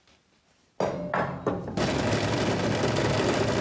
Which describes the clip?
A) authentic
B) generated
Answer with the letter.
A